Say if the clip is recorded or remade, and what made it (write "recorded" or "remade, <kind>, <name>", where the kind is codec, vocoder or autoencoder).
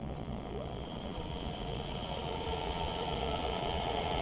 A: remade, vocoder, Vocos